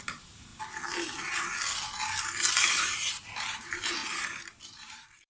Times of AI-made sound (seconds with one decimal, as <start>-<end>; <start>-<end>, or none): 0.0-0.5; 2.5-5.3